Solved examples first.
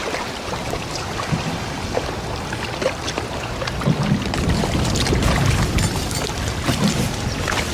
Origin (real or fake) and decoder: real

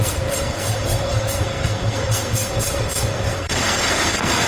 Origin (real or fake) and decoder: fake, codec, SNAC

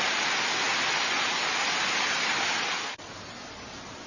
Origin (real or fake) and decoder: real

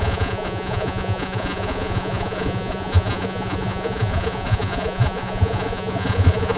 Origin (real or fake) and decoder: fake, vocoder, Vocos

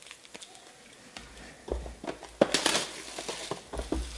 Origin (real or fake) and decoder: real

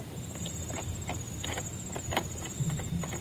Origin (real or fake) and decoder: real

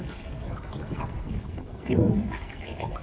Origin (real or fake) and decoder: fake, codec, SNAC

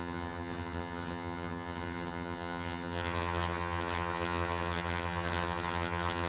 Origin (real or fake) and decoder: fake, vocoder, HiFi-GAN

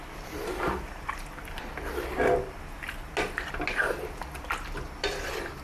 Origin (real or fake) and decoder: real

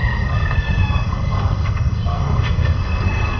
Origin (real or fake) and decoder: fake, codec, SNAC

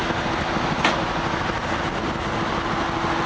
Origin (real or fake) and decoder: real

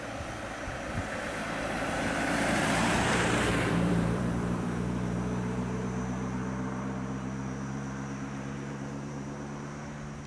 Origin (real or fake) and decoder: fake, vocoder, BigVGAN v2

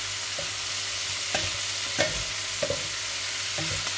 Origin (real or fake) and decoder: real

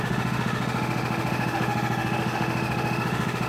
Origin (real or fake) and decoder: fake, autoencoder, DAC-VAE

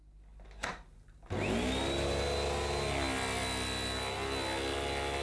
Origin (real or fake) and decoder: real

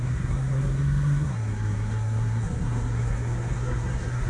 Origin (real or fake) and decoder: fake, codec, SNAC